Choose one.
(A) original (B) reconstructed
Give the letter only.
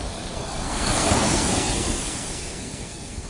B